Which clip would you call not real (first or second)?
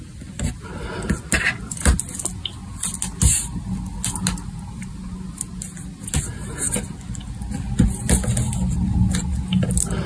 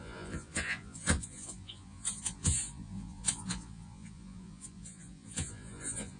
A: second